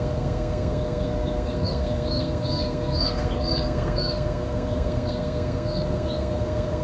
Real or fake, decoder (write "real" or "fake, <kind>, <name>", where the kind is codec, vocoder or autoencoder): fake, codec, SNAC